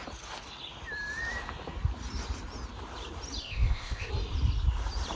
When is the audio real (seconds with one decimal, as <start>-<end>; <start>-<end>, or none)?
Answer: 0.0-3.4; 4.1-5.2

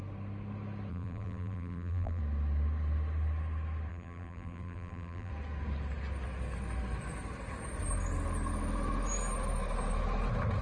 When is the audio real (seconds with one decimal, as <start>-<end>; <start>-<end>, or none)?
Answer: 0.0-0.9; 2.2-3.9; 5.3-10.6

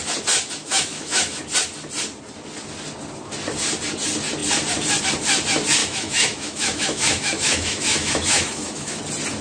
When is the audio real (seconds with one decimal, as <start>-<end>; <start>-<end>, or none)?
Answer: 0.0-0.6; 1.4-5.8; 9.0-9.4

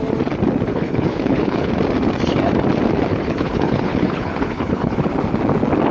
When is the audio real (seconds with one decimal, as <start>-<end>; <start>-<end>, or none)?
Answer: 0.0-0.7; 1.7-3.1; 5.1-5.9

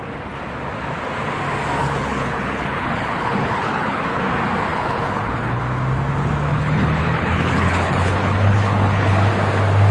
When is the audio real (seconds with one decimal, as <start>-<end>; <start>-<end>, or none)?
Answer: 0.0-1.8; 4.2-4.7; 5.6-6.5; 9.3-9.9

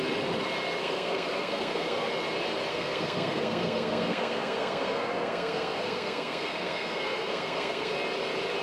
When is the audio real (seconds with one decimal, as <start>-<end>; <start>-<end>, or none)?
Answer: 0.0-0.8; 2.1-2.7; 7.9-8.6

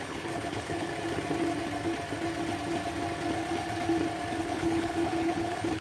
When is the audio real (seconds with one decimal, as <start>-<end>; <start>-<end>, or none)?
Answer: 0.9-4.4